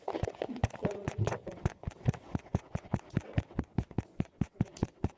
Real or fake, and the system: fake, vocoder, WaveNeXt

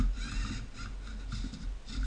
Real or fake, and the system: real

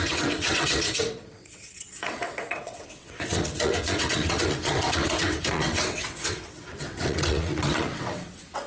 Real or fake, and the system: fake, vocoder, WaveNeXt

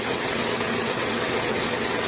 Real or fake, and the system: fake, vocoder, WaveNeXt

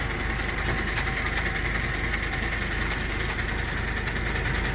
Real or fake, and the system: real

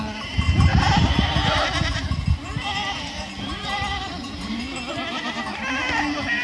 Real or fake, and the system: real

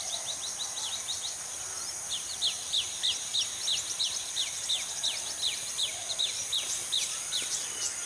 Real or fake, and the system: real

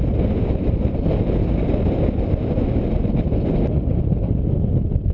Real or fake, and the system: real